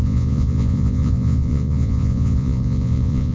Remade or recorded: remade